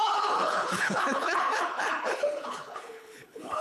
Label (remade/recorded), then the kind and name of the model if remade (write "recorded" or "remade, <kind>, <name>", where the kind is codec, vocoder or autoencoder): remade, codec, HILCodec